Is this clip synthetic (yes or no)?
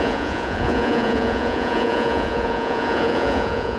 yes